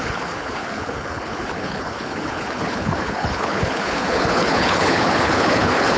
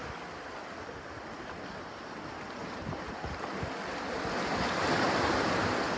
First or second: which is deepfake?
first